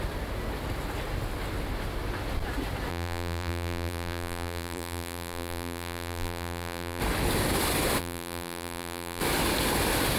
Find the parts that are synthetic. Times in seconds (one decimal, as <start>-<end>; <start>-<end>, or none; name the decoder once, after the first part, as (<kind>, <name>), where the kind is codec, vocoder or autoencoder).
2.9-7.0 (vocoder, BigVGAN v2); 8.0-9.2